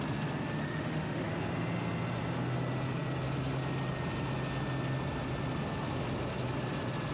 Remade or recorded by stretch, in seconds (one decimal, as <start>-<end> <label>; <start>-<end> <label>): 0.0-0.6 recorded; 0.6-1.3 remade; 1.3-7.1 recorded